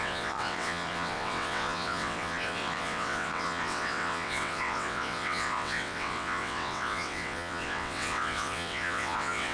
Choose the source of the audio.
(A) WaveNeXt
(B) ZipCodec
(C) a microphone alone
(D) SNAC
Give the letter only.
A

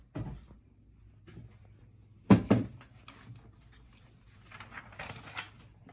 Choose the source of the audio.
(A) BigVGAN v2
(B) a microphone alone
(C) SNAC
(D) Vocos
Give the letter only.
B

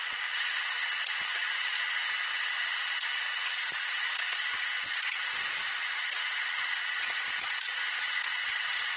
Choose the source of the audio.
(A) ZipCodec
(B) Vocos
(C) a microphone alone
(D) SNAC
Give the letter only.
B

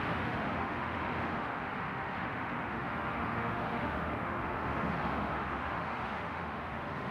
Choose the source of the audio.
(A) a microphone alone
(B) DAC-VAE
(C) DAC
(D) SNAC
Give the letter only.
B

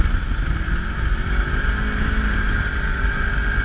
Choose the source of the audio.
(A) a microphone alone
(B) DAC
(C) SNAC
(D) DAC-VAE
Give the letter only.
A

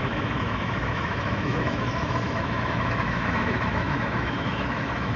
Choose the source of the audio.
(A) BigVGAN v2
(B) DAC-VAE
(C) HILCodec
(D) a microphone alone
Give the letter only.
B